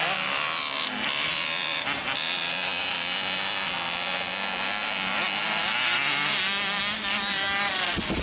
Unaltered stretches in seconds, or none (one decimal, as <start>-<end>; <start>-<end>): 0.0-8.2